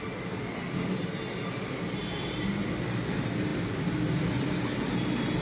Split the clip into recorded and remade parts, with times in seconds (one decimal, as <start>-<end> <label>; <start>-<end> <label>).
0.0-5.4 recorded